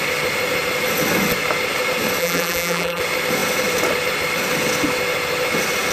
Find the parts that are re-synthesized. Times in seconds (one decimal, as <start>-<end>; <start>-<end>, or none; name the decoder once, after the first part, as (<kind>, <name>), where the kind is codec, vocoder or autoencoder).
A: 2.2-3.0 (vocoder, BigVGAN v2)